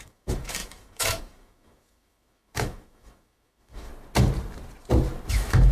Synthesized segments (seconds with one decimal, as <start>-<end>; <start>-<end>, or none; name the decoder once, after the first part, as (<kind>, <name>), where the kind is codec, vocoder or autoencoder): 0.0-3.9 (autoencoder, DAC-VAE); 5.3-5.7